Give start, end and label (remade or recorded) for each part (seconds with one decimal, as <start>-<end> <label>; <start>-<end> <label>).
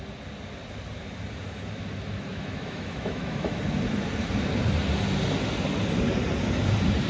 0.0-2.3 recorded; 2.3-3.6 remade; 3.6-7.1 recorded